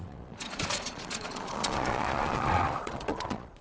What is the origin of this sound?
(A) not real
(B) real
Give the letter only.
A